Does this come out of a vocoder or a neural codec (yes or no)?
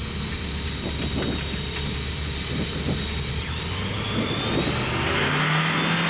no